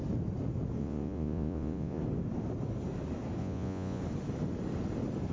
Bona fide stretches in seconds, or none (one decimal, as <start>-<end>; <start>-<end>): 0.0-0.8; 2.0-3.4; 4.0-5.3